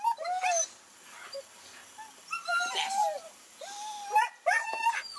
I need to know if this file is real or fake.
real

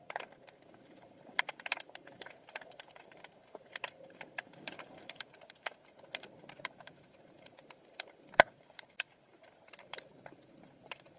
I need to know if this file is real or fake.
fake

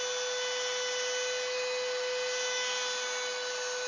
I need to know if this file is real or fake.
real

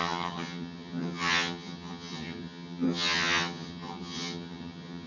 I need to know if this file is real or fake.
fake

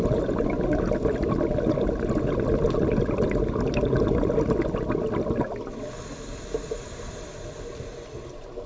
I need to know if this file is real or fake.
real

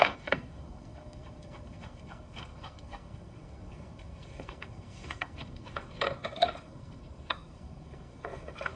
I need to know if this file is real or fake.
fake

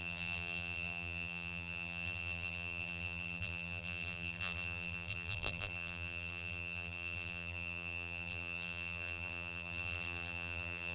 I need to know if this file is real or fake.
fake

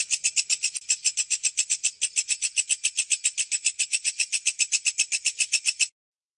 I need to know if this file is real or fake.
real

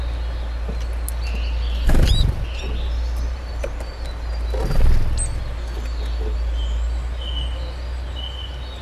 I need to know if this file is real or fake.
real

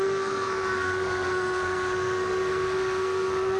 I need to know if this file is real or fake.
fake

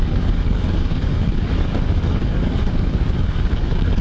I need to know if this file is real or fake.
fake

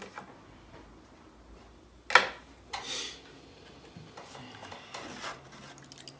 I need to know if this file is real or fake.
real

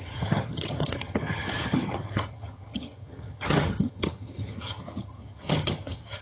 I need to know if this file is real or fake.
fake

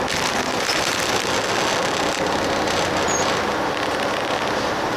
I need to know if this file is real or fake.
real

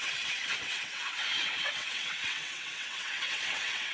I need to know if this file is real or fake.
fake